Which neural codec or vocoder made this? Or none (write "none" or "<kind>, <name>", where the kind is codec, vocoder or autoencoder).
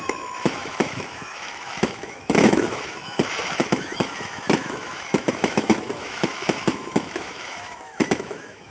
autoencoder, DAC-VAE